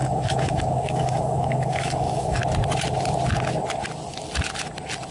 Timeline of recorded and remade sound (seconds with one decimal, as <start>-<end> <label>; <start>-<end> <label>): 0.0-2.4 remade; 2.4-5.1 recorded